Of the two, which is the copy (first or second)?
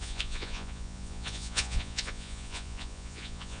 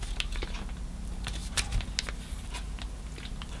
first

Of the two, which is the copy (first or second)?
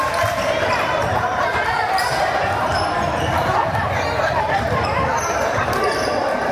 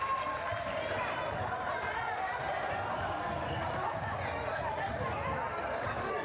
first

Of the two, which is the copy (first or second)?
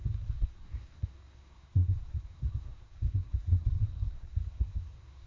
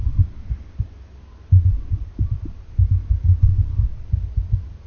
first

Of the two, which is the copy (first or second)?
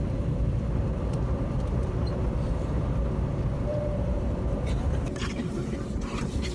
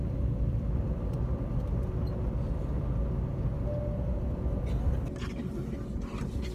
first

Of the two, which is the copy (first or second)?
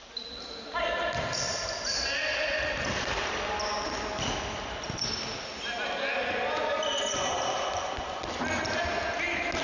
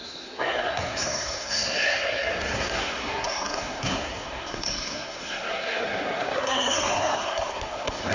second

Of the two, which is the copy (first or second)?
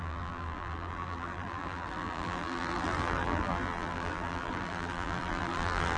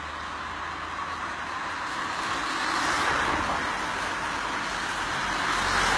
first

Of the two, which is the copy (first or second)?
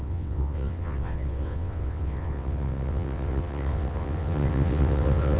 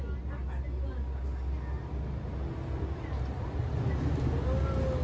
first